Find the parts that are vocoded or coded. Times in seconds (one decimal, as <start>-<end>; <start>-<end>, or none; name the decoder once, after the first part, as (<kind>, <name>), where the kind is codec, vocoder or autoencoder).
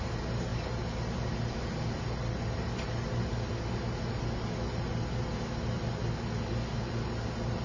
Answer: none